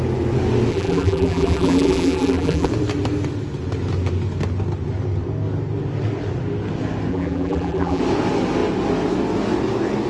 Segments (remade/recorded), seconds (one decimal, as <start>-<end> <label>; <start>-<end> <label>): 0.0-0.7 recorded; 0.7-2.7 remade; 2.7-7.1 recorded; 7.1-8.0 remade; 8.0-10.1 recorded